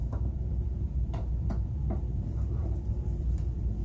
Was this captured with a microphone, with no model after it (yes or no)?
no